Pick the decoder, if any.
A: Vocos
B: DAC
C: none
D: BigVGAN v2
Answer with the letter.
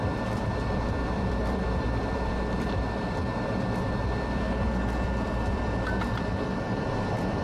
D